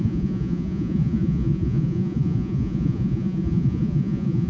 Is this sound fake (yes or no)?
yes